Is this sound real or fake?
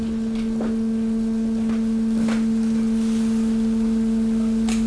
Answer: real